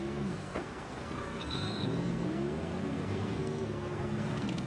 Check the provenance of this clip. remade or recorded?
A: remade